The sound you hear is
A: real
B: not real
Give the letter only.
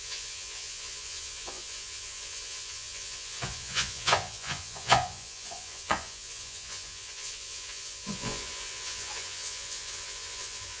B